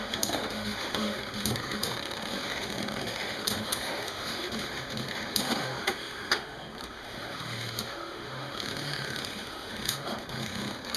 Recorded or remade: remade